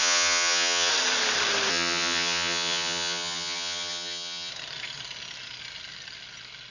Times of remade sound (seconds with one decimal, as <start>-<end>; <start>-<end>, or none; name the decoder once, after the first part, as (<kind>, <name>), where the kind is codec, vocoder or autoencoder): 0.0-0.9 (vocoder, HiFi-GAN); 1.7-4.5